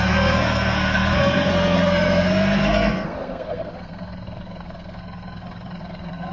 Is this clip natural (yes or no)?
no